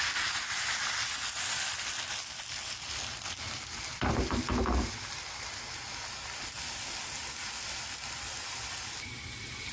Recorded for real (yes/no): yes